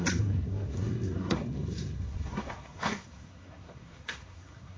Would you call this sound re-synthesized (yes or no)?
yes